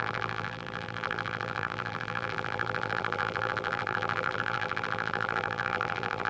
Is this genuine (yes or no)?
no